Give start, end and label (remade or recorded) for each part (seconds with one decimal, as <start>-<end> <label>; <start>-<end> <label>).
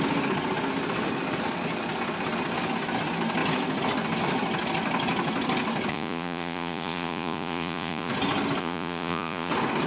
0.0-5.9 recorded; 5.9-8.1 remade; 8.1-8.6 recorded; 8.6-9.5 remade; 9.5-9.9 recorded